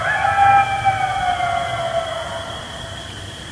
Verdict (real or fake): real